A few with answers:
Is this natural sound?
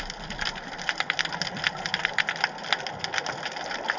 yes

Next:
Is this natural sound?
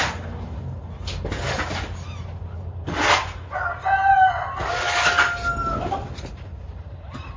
yes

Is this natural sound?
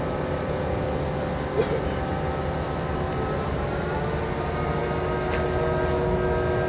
yes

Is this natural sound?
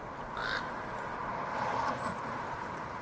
yes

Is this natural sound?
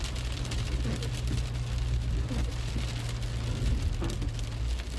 yes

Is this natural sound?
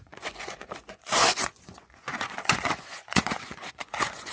no